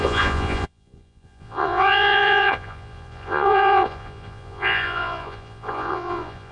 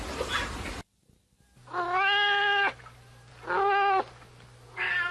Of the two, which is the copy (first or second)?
first